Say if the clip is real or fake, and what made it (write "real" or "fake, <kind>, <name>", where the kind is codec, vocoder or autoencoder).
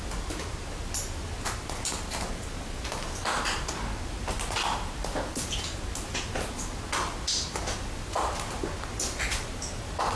real